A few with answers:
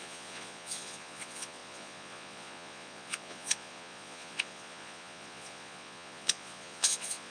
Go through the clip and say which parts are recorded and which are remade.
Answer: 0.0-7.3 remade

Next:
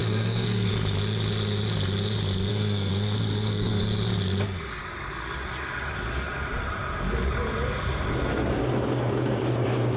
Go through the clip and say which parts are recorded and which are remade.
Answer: 0.0-0.7 remade; 0.7-2.5 recorded; 2.5-3.8 remade; 3.8-10.0 recorded